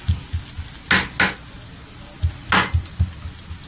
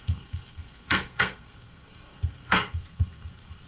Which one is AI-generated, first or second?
second